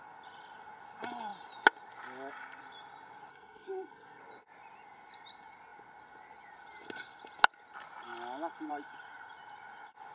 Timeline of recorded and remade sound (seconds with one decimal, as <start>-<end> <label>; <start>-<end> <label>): 0.0-3.3 recorded; 3.3-4.2 remade; 4.2-10.1 recorded